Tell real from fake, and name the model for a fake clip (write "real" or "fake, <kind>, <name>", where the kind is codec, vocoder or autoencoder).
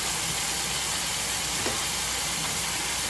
real